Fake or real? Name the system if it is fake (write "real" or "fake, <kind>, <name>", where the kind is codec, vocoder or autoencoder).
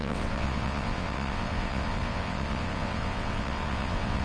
fake, vocoder, WaveNeXt